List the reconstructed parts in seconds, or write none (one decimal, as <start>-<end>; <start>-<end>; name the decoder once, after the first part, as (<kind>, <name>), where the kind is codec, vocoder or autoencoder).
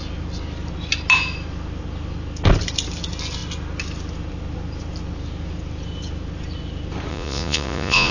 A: 7.1-8.1 (vocoder, Vocos)